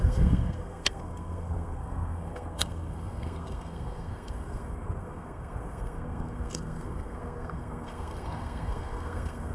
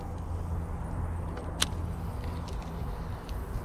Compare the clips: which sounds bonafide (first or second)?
second